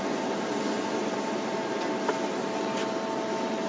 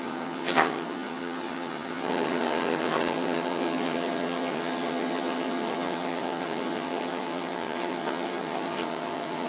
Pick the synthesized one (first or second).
second